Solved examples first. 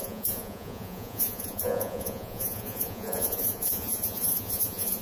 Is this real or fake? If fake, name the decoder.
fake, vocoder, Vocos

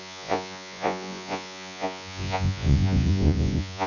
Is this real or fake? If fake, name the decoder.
fake, vocoder, Vocos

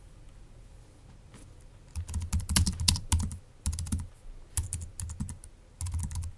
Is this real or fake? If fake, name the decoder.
real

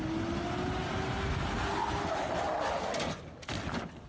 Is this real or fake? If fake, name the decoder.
real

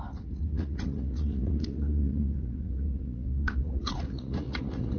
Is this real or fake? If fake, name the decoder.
fake, vocoder, Vocos